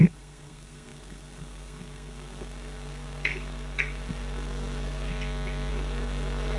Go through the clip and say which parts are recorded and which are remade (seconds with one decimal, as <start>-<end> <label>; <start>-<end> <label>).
0.0-5.1 remade; 5.1-5.7 recorded; 5.7-6.6 remade